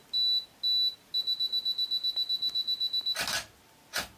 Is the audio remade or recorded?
recorded